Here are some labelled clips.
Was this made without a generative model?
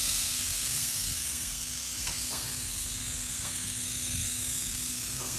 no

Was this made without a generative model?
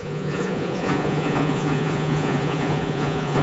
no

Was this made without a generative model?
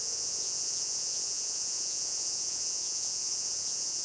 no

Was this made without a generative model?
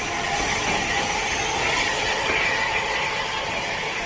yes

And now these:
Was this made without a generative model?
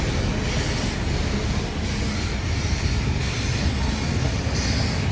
yes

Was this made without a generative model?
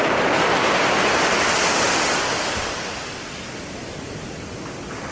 yes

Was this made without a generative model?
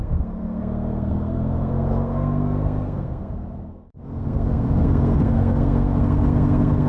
no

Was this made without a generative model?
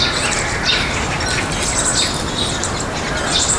yes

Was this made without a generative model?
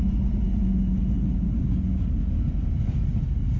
yes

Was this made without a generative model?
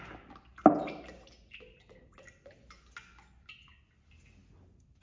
yes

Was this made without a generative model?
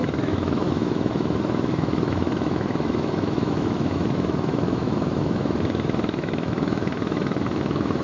no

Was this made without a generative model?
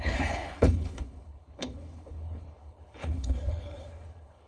no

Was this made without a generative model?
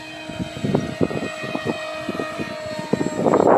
yes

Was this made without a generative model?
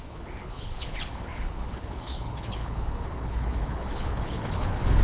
no